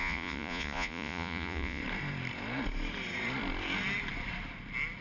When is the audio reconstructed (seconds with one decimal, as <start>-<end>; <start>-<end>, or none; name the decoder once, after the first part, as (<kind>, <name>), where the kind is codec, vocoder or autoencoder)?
0.0-1.8 (vocoder, Vocos)

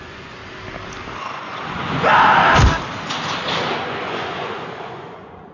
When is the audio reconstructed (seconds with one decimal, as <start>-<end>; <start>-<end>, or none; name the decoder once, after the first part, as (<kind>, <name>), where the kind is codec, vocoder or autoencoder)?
0.0-0.4 (vocoder, Vocos); 1.2-2.1; 3.8-5.5

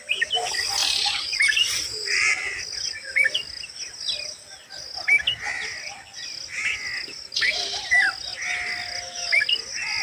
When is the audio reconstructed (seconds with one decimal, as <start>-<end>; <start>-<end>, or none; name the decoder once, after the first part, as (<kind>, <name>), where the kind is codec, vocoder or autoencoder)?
0.8-2.6 (vocoder, BigVGAN v2)

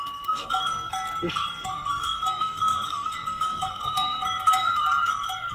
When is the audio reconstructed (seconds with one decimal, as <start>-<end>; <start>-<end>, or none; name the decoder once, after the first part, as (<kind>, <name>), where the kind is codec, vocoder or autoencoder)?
0.0-5.5 (codec, SNAC)

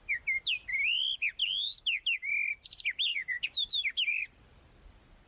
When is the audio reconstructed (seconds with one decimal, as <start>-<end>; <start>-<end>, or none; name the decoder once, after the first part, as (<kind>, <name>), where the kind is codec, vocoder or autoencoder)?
1.4-2.3 (autoencoder, DAC-VAE); 3.1-4.2

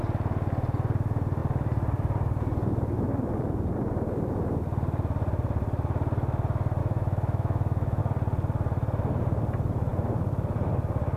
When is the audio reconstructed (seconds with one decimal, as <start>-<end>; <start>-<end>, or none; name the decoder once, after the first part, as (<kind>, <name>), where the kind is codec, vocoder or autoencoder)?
6.8-8.0 (autoencoder, DAC-VAE)